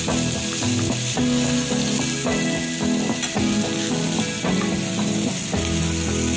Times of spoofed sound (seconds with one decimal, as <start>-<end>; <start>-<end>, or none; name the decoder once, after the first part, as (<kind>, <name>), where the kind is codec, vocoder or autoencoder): none